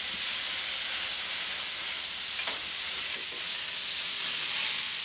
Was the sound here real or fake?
real